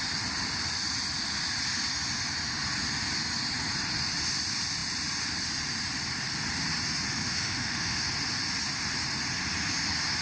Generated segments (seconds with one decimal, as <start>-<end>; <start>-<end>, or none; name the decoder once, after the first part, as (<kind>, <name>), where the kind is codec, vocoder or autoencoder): 7.2-8.1 (autoencoder, DAC-VAE)